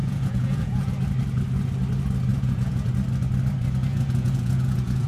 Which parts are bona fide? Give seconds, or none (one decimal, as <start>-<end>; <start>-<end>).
0.9-2.3; 2.9-3.9